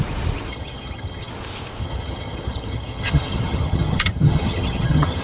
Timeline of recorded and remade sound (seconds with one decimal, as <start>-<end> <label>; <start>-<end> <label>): 0.0-0.5 recorded; 0.5-1.3 remade; 1.3-1.8 recorded; 1.8-5.2 remade